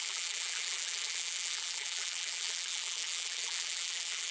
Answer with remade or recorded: remade